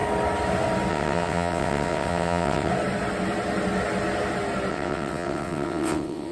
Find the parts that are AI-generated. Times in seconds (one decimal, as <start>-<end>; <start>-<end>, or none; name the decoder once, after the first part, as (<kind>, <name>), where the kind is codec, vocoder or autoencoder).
0.9-2.7 (vocoder, WaveNeXt); 4.7-6.3